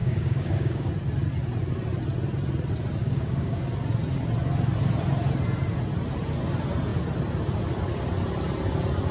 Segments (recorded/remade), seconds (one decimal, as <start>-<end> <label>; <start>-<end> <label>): 0.0-0.9 remade; 0.9-3.0 recorded; 3.0-3.6 remade; 3.6-9.1 recorded